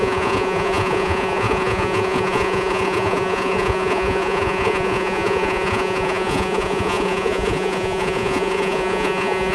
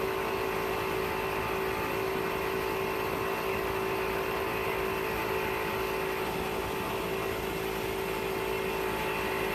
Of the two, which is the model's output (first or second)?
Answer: first